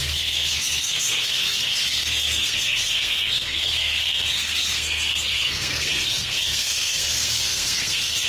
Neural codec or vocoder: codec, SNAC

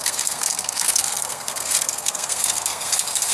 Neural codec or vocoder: codec, SNAC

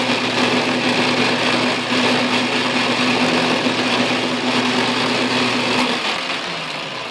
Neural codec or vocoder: none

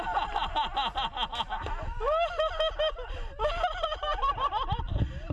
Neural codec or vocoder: none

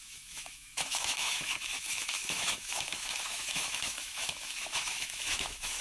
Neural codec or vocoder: autoencoder, DAC-VAE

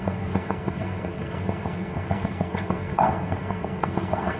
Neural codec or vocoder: codec, SNAC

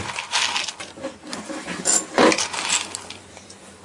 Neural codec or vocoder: none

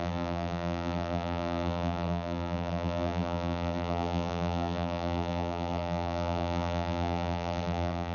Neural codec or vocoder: vocoder, BigVGAN v2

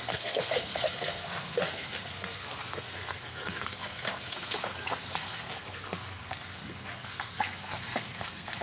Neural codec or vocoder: codec, SNAC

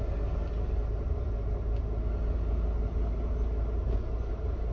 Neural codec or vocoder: none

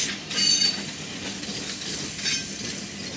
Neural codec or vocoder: none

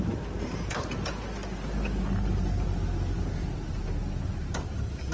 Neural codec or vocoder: none